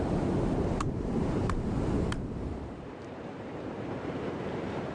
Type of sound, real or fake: fake